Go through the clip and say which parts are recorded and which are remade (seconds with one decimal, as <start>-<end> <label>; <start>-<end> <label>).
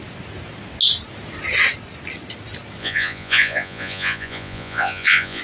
0.0-2.8 recorded; 2.8-5.4 remade